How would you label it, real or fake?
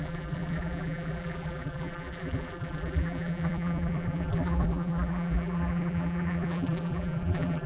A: fake